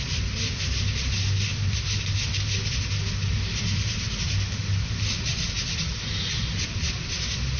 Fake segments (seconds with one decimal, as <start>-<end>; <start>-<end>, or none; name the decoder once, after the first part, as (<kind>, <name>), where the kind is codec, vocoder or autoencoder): none